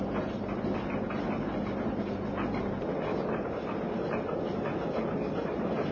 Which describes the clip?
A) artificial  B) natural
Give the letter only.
B